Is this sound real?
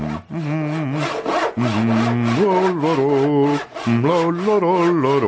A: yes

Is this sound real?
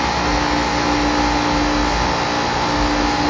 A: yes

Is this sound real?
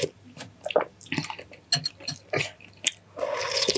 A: yes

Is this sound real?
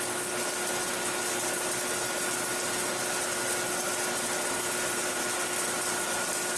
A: yes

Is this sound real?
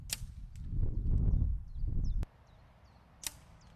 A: yes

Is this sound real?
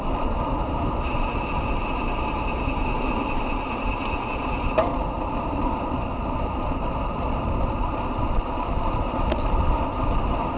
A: yes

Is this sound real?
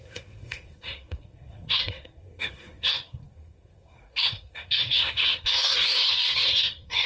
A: no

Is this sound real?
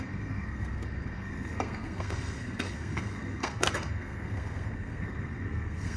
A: no